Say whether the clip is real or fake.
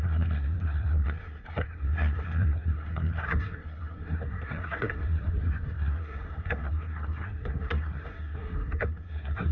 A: fake